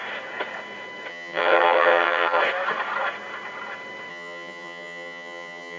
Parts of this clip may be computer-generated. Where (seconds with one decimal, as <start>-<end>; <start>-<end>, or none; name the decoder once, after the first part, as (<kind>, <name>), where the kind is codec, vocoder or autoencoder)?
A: 1.1-2.4 (vocoder, HiFi-GAN); 4.1-5.8